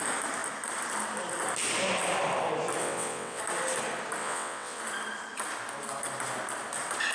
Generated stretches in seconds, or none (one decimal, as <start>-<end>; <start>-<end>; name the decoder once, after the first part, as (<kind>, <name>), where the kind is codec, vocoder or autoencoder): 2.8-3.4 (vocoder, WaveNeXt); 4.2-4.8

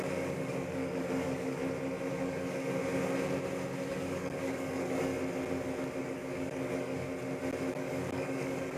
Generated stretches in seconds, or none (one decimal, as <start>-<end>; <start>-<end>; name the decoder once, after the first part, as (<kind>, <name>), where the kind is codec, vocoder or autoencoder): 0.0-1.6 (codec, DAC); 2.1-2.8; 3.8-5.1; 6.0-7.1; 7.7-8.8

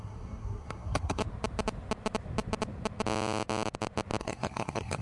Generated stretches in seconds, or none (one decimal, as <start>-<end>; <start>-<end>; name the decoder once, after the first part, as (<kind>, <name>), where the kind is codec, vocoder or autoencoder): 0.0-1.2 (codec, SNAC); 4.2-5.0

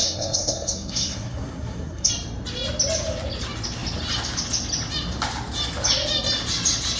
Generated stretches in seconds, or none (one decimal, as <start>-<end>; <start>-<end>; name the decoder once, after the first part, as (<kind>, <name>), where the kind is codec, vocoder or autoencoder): 0.0-2.1 (codec, SNAC)

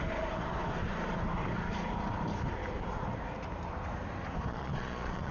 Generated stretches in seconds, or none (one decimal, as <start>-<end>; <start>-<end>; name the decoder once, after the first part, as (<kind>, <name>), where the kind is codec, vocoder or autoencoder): 4.5-5.3 (vocoder, Vocos)